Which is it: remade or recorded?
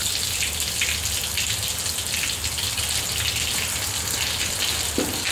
recorded